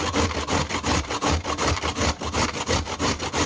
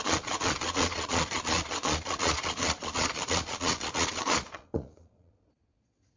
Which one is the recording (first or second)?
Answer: first